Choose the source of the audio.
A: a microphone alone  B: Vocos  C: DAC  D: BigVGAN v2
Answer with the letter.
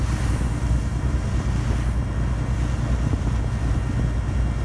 A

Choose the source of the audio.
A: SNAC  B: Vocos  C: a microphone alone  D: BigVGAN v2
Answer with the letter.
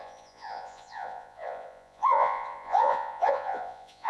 B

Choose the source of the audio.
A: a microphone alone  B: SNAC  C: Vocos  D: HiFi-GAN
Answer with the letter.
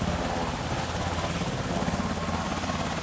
A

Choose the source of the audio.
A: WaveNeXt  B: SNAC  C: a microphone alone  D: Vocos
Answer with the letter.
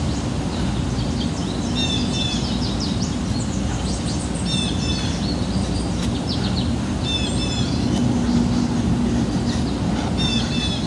C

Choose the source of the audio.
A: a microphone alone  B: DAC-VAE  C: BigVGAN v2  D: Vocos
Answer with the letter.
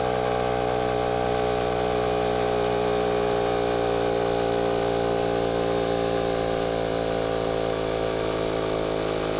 A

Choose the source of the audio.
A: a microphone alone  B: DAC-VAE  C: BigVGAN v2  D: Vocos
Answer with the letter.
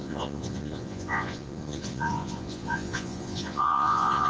D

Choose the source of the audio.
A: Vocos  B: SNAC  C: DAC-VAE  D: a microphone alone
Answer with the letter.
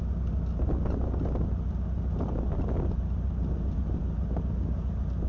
D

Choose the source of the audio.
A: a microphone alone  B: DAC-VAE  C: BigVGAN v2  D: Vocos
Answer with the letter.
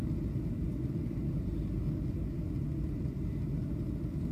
A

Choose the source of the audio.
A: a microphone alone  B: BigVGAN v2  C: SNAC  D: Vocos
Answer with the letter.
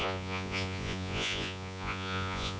D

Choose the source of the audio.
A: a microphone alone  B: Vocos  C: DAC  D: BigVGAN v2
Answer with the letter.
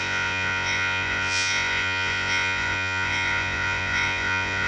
B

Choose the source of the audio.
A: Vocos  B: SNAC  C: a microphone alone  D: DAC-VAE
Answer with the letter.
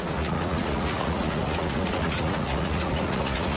A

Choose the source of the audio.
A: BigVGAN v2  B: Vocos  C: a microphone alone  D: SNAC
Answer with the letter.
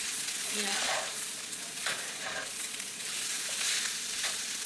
B